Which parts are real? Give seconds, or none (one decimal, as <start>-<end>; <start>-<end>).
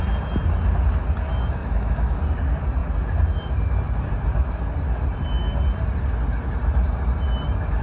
0.0-1.6; 2.2-7.8